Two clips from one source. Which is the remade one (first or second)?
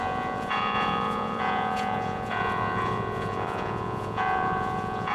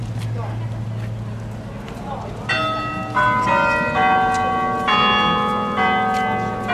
first